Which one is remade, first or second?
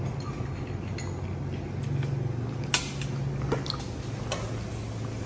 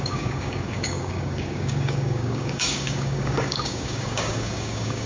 second